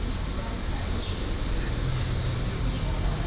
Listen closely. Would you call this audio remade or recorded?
recorded